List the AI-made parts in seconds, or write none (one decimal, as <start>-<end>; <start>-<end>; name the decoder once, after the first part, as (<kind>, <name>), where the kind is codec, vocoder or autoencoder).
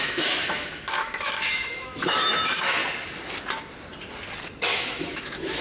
0.0-2.8 (autoencoder, DAC-VAE); 4.6-5.6